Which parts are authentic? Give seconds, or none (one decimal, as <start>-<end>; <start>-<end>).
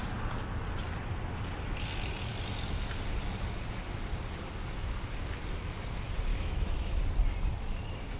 0.0-6.3; 7.0-8.2